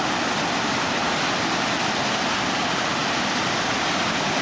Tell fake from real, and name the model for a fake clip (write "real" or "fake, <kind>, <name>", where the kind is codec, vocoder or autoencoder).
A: real